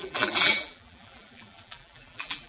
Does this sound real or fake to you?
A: fake